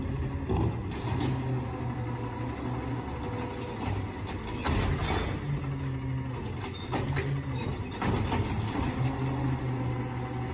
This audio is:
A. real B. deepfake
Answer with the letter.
A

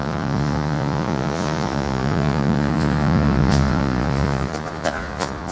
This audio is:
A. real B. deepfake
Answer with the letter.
B